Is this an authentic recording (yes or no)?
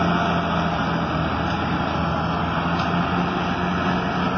yes